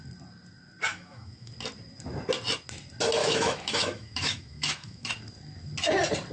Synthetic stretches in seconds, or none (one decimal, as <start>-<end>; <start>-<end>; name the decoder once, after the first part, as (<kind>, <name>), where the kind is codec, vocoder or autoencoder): 0.9-1.5 (autoencoder, DAC-VAE); 3.2-5.1